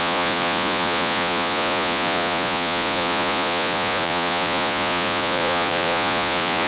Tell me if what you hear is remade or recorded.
remade